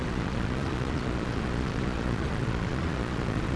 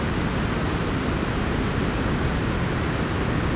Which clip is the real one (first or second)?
second